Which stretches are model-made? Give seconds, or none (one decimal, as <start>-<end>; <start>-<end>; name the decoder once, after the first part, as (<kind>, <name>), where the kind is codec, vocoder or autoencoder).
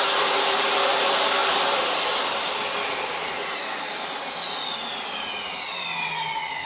none